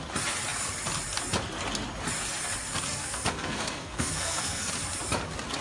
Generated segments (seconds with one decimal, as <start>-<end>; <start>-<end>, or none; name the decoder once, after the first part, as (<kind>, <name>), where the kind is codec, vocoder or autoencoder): 2.9-4.7 (codec, SNAC)

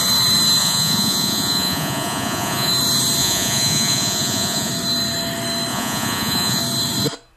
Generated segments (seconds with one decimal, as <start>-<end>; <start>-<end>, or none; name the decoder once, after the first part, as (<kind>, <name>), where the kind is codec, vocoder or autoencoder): 0.6-2.7 (vocoder, Vocos); 3.2-4.7; 5.7-6.6

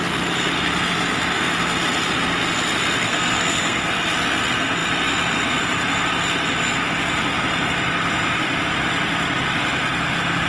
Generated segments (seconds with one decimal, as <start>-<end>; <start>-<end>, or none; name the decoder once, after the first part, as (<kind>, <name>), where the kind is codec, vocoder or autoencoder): 3.1-3.9 (codec, SNAC)

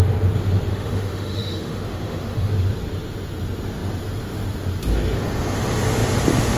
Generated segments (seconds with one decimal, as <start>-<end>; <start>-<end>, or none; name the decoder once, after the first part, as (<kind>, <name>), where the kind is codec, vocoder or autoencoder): 0.7-2.5 (autoencoder, DAC-VAE)

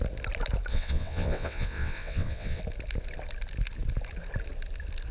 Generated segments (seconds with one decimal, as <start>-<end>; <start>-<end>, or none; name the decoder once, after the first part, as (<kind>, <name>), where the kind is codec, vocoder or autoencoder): 0.7-2.6 (vocoder, WaveNeXt)

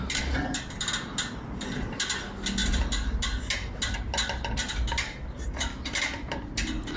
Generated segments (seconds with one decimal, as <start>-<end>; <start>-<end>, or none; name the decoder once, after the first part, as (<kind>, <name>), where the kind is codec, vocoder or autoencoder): none

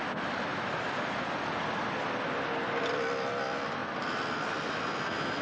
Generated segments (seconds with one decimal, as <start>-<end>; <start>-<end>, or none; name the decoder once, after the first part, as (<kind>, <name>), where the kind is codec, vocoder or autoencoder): 0.5-2.6 (vocoder, BigVGAN v2); 3.8-4.7

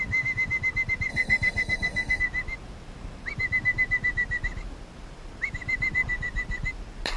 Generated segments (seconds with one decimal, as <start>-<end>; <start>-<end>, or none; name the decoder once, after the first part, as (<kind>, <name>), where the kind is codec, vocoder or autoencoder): 1.1-2.2 (codec, SNAC)